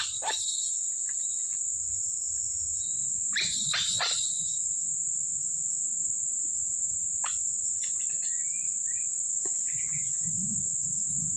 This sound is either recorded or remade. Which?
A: remade